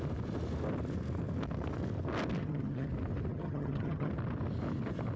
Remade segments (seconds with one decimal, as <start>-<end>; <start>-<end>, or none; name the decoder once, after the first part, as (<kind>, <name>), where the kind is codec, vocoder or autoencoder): 2.4-2.9 (vocoder, HiFi-GAN); 3.3-4.1